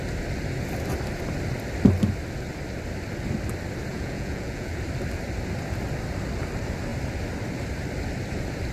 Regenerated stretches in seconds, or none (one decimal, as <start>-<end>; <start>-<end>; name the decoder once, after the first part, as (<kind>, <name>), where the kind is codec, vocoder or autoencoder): 3.9-4.8 (vocoder, Vocos)